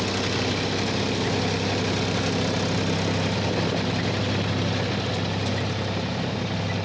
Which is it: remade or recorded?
recorded